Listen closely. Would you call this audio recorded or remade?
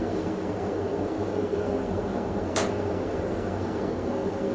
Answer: remade